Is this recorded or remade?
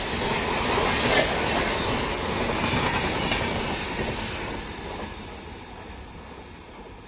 recorded